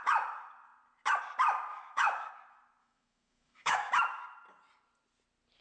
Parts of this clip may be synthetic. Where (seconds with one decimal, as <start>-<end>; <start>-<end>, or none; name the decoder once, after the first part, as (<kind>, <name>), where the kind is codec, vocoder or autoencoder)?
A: 1.7-2.3 (autoencoder, DAC-VAE); 2.8-3.9